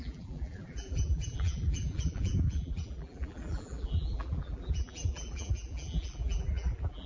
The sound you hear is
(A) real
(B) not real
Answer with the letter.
B